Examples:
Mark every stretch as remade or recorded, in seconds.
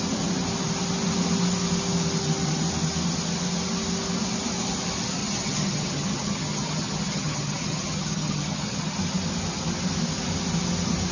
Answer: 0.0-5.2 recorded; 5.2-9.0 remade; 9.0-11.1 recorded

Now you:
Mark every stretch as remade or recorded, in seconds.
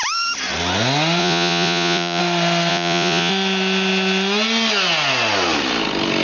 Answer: 0.0-1.2 recorded; 1.2-2.2 remade; 2.2-2.7 recorded; 2.7-3.3 remade; 3.3-6.2 recorded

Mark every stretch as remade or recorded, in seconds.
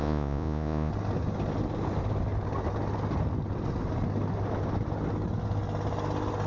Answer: 0.0-0.9 remade; 0.9-6.5 recorded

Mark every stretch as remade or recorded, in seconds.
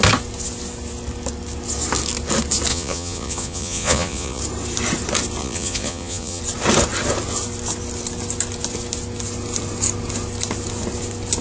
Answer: 0.0-2.7 recorded; 2.7-4.4 remade; 4.4-5.4 recorded; 5.4-6.4 remade; 6.4-11.4 recorded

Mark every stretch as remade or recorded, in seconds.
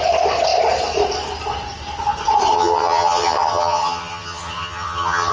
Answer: 0.0-2.5 recorded; 2.5-5.3 remade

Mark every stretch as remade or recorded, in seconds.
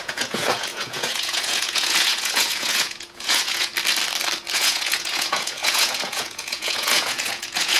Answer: 0.0-3.7 remade; 3.7-4.5 recorded; 4.5-7.8 remade